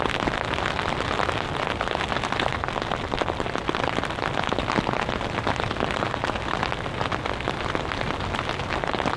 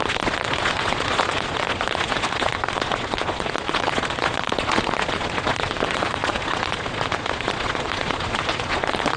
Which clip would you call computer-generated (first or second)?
second